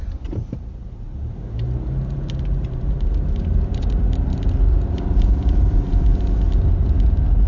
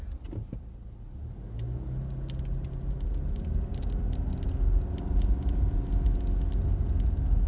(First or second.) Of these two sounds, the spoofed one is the first